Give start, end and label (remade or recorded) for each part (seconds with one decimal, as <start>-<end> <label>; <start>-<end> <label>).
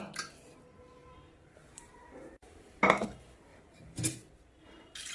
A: 0.0-1.0 recorded; 1.0-2.6 remade; 2.6-3.5 recorded; 3.5-4.0 remade; 4.0-5.1 recorded